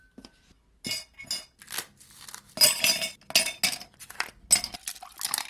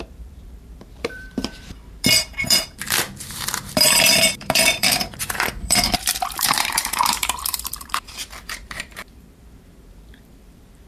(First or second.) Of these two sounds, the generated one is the second